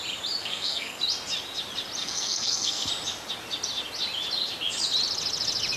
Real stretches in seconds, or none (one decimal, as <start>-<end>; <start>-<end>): 0.0-0.4; 1.0-2.0; 2.9-5.8